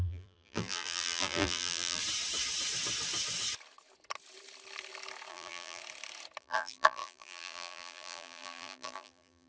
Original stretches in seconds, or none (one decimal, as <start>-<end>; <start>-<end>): 2.0-5.3; 5.8-6.4

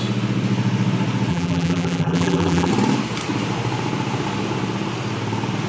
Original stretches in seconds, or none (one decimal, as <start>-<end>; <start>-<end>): 0.0-1.3; 2.7-5.7

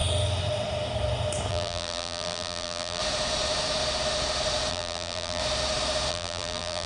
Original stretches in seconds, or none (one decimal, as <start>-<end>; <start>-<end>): 0.0-1.5; 3.0-4.7; 5.4-6.1

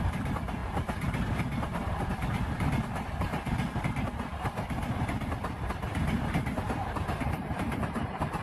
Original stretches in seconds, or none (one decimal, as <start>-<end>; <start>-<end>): none

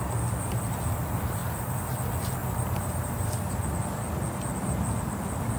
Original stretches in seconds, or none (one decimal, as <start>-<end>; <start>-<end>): 0.0-1.4; 1.9-2.4; 3.7-5.6